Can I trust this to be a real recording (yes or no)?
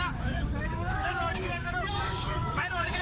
no